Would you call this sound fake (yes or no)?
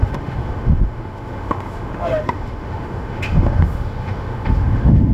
yes